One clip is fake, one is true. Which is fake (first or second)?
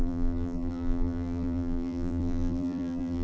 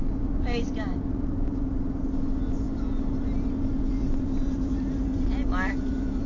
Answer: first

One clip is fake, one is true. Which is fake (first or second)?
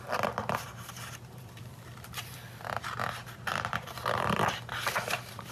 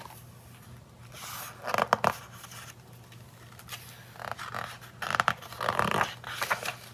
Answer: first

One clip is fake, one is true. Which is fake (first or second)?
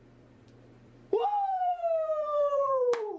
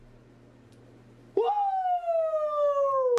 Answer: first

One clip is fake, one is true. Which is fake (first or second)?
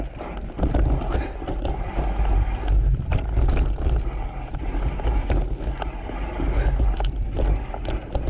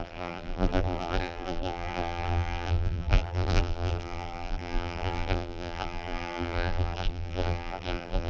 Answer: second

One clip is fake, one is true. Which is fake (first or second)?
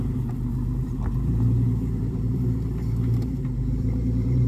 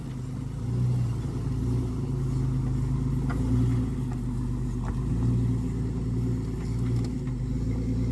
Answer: first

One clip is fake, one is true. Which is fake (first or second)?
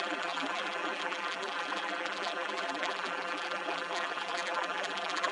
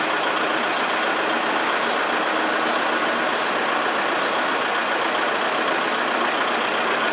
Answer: first